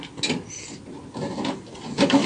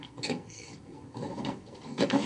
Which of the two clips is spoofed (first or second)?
second